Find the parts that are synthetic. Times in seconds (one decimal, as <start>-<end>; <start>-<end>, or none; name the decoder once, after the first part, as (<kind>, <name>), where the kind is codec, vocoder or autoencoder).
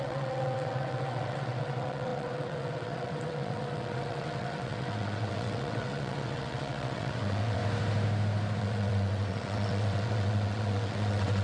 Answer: 0.0-7.6 (vocoder, WaveNeXt); 8.6-11.4